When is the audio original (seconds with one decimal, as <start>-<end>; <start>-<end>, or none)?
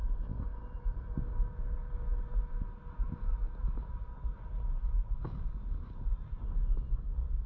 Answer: 0.0-7.5